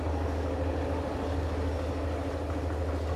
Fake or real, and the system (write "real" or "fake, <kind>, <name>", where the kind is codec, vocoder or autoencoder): real